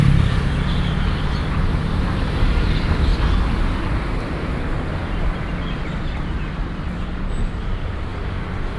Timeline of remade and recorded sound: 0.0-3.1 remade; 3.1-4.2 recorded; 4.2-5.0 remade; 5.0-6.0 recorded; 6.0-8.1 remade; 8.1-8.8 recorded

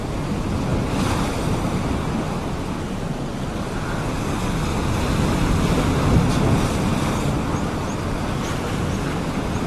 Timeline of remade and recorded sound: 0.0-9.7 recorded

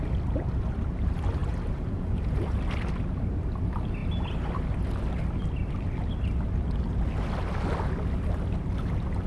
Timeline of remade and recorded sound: 0.0-1.4 recorded; 1.4-2.6 remade; 2.6-9.3 recorded

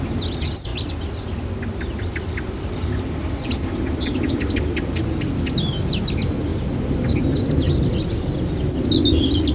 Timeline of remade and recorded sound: 0.0-9.5 recorded